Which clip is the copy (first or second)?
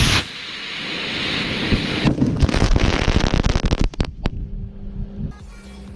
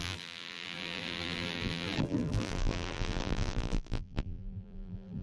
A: second